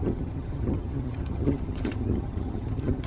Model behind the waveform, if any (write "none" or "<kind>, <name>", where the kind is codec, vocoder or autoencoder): vocoder, HiFi-GAN